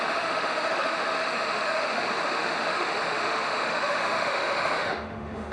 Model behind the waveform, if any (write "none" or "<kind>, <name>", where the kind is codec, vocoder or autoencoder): autoencoder, DAC-VAE